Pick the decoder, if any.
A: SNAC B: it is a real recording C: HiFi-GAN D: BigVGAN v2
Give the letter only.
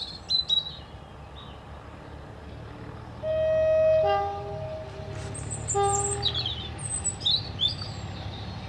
B